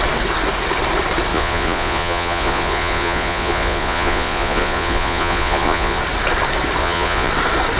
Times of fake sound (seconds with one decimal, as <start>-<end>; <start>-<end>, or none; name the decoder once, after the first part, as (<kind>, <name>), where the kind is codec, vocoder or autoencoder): 1.3-6.0 (vocoder, Vocos); 6.8-7.3